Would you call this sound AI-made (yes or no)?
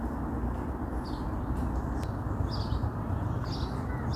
no